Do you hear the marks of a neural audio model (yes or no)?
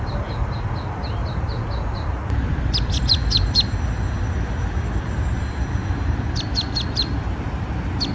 yes